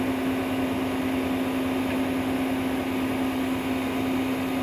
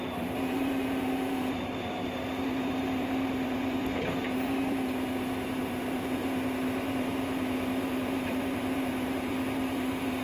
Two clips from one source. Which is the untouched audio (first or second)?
first